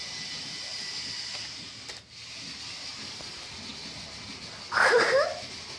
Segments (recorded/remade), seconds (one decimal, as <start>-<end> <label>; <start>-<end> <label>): 0.0-5.8 recorded

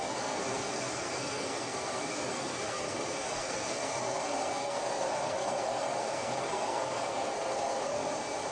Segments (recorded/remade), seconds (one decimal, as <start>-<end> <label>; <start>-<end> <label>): 0.0-8.0 remade; 8.0-8.5 recorded

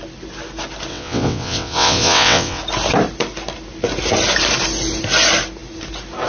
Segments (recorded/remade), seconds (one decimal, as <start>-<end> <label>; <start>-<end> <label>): 0.0-0.9 recorded; 0.9-2.6 remade; 2.6-6.3 recorded

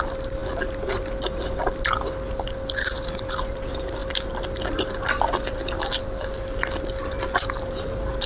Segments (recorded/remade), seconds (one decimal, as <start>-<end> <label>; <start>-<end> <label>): 0.0-8.3 recorded

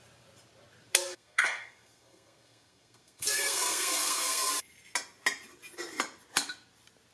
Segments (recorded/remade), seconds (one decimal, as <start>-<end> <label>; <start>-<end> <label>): 0.0-1.1 recorded; 1.1-4.5 remade; 4.5-7.1 recorded